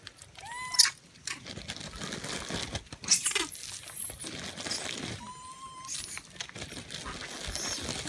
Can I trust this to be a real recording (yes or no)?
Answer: yes